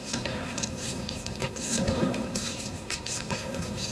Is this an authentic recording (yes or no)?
no